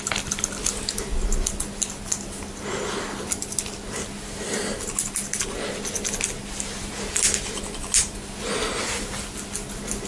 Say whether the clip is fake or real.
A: real